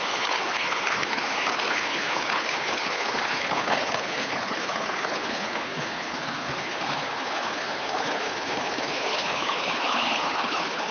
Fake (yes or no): yes